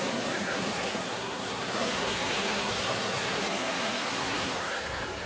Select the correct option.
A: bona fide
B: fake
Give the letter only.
B